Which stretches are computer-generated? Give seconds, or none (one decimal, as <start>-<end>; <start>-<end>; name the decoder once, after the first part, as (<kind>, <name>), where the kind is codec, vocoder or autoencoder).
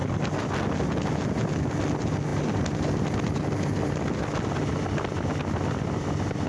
none